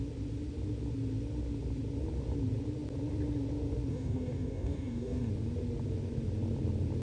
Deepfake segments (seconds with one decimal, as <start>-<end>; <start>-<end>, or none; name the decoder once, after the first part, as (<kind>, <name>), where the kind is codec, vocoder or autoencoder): 3.9-5.3 (codec, DAC)